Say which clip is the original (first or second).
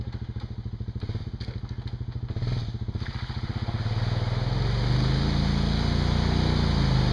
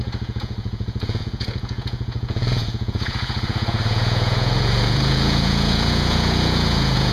first